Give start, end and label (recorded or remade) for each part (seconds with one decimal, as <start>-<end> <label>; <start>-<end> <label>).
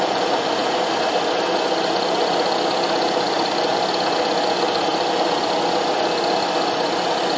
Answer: 0.0-7.4 recorded